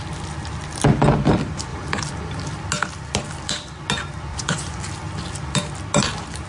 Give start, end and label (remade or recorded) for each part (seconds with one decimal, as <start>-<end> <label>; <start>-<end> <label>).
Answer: 0.0-4.3 recorded; 4.3-4.8 remade; 4.8-6.5 recorded